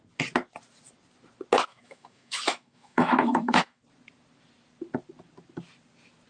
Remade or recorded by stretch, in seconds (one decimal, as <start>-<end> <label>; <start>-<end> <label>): 0.0-1.7 recorded; 1.7-3.8 remade; 3.8-6.3 recorded